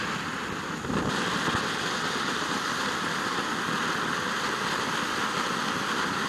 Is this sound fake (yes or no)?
no